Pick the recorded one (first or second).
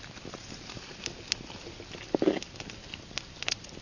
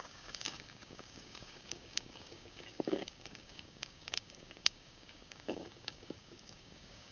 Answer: first